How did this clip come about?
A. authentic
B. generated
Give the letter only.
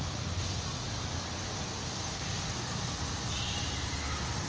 A